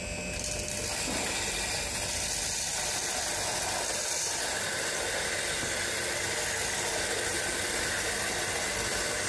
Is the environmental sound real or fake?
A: real